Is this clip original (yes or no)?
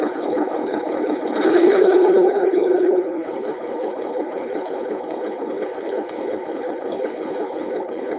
no